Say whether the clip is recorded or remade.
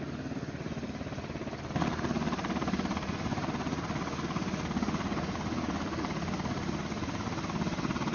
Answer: recorded